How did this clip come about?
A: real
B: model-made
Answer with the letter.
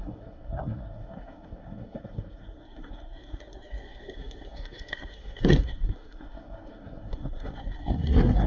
B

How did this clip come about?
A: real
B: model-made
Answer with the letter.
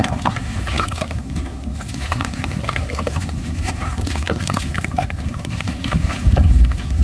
B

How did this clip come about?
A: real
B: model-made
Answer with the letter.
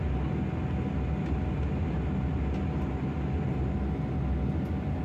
A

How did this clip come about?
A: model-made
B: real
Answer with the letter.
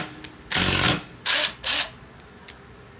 B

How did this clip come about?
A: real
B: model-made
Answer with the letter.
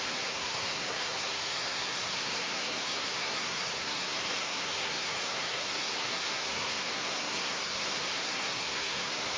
B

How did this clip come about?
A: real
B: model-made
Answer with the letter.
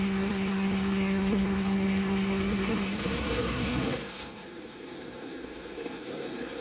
B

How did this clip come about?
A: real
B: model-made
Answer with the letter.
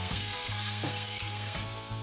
B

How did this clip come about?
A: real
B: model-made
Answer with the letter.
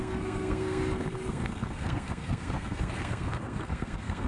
B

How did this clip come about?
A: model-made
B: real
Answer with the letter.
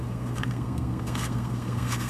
A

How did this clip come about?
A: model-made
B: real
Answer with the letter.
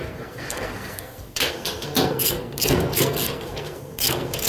A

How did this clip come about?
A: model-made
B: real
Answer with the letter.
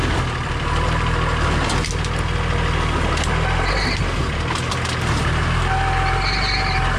B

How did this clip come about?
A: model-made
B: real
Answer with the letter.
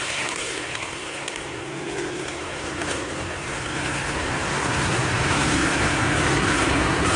A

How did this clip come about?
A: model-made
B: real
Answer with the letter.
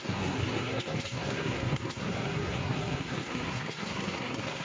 A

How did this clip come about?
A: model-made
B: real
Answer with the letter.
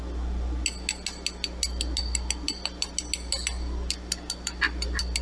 B